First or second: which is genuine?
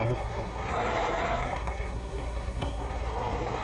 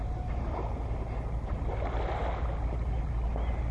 second